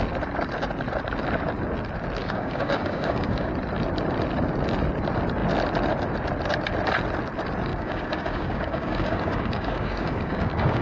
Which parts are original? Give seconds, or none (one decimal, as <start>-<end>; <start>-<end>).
0.0-2.2; 3.5-7.7